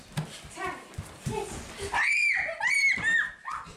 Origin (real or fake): real